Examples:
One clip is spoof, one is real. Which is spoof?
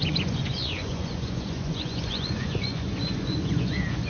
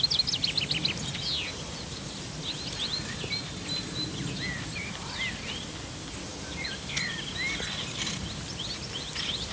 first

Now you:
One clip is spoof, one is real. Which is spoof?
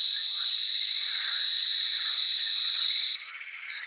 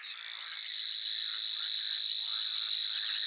first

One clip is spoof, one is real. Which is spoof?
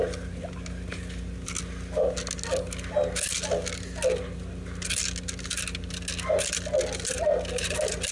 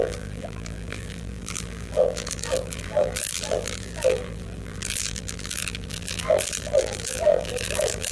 second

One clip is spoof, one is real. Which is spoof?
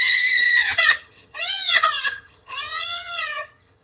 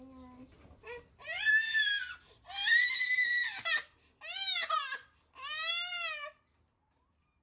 first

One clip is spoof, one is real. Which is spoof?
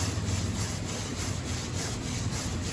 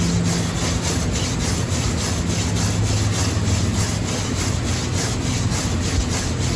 first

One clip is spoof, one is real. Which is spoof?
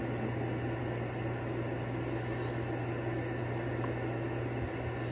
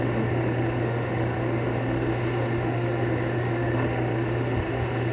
second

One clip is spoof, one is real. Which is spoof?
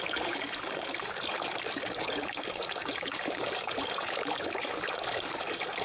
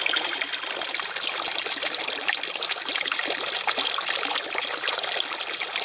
first